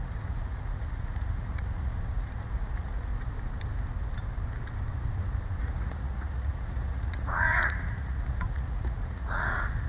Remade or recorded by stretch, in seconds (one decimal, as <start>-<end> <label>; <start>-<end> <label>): 0.0-3.1 remade; 3.1-5.6 recorded; 5.6-9.9 remade